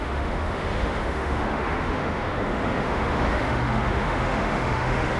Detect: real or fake fake